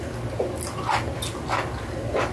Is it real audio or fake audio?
real